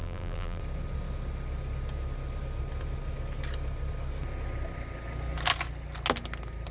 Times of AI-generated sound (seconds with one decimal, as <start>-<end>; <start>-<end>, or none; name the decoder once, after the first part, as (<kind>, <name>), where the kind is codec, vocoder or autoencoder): 0.0-0.6 (vocoder, BigVGAN v2)